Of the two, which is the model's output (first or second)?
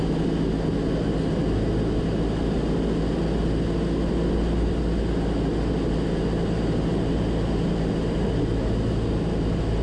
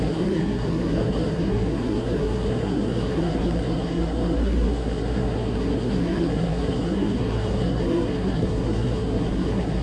second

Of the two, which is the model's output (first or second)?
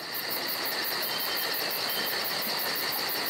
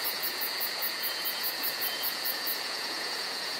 second